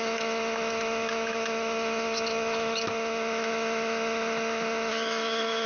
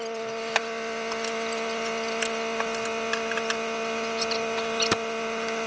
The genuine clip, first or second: second